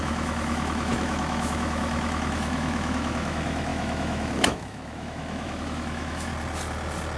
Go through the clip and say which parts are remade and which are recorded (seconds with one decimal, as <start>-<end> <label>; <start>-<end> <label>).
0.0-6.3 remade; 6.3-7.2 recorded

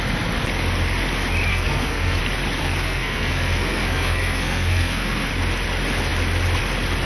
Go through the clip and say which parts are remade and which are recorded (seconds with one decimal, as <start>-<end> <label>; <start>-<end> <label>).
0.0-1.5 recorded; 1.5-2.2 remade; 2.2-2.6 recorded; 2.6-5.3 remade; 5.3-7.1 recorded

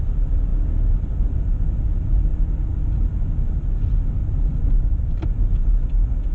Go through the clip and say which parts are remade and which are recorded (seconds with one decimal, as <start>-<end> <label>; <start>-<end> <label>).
0.0-0.5 remade; 0.5-1.2 recorded; 1.2-2.3 remade; 2.3-3.5 recorded; 3.5-4.2 remade; 4.2-4.9 recorded; 4.9-6.3 remade